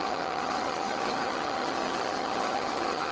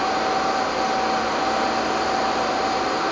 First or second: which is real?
second